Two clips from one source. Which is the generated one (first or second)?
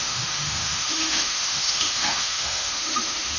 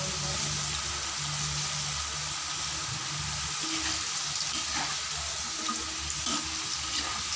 first